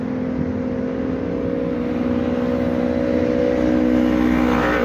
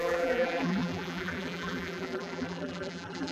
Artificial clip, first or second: second